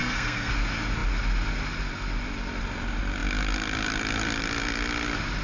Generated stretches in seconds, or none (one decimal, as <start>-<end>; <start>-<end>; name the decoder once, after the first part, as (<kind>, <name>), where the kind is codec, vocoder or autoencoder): 0.0-0.5 (codec, SNAC)